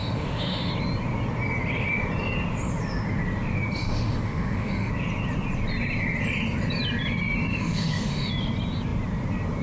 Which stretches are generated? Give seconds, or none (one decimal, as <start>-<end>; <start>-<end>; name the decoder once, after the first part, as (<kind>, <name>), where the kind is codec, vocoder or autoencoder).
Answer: 0.0-0.7 (autoencoder, DAC-VAE); 3.8-4.9; 7.5-8.3